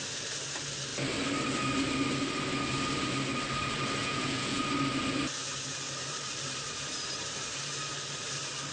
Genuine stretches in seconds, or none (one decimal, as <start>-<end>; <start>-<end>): 0.0-4.0; 4.6-8.7